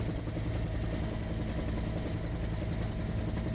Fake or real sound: real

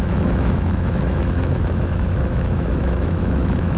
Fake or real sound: fake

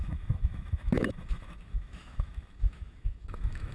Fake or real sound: fake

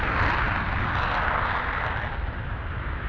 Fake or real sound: real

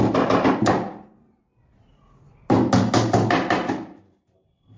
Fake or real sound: real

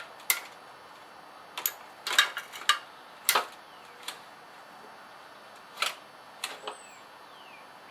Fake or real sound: real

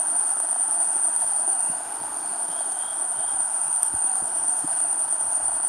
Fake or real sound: fake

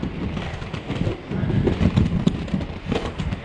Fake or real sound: real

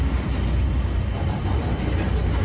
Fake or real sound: real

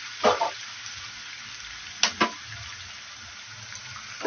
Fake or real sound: real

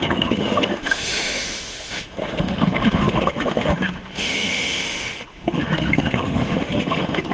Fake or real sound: fake